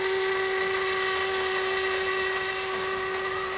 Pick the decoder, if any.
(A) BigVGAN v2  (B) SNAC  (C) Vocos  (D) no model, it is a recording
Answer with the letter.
D